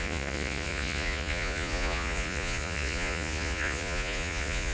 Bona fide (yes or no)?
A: no